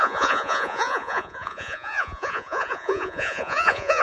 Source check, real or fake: fake